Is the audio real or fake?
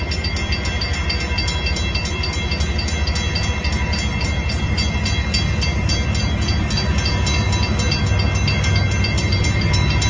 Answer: real